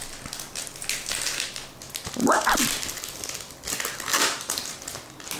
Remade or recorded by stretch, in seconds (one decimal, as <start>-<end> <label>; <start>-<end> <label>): 0.0-4.1 recorded; 4.1-4.8 remade; 4.8-5.4 recorded